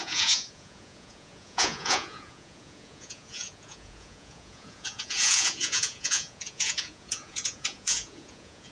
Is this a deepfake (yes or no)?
yes